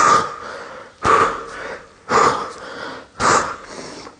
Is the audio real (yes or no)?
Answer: yes